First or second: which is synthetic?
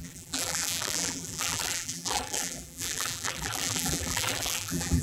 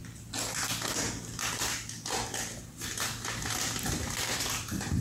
first